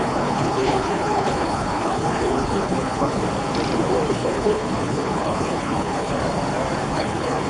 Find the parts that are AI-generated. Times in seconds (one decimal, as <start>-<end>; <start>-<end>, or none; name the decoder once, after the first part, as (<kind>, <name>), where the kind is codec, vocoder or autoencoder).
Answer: 0.0-3.2 (codec, HILCodec); 4.1-6.2; 6.9-7.5